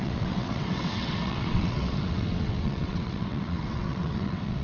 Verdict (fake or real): fake